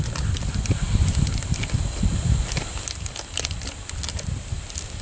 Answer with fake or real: real